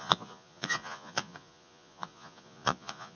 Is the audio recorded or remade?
remade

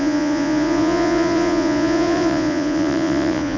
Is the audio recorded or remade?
remade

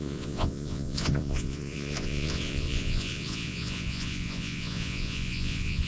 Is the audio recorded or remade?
remade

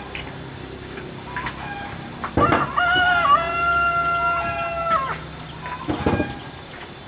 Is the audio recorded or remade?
recorded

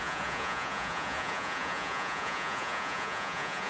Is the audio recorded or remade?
remade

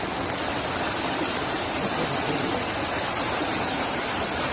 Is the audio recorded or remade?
recorded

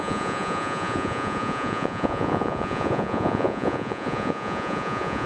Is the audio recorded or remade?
remade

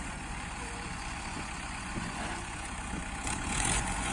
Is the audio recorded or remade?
remade